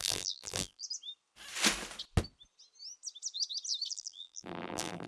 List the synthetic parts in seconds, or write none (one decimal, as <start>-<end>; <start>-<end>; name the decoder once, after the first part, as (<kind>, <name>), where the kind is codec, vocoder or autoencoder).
0.0-0.8 (vocoder, BigVGAN v2); 3.9-5.1